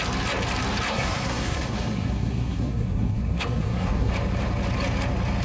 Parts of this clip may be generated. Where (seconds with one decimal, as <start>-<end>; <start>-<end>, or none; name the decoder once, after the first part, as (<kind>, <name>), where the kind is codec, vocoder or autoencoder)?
0.9-4.1 (codec, SNAC)